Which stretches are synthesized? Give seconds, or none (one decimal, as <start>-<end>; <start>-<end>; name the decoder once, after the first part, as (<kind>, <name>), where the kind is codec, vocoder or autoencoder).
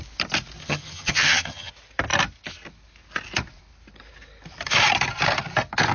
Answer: 0.6-1.7 (vocoder, HiFi-GAN)